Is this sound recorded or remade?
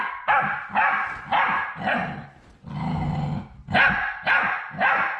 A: recorded